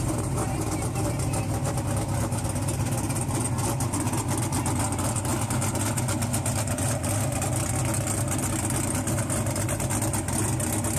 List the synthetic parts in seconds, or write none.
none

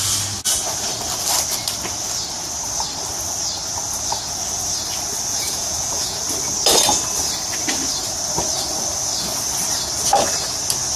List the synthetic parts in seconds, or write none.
5.3-6.2 (vocoder, Vocos)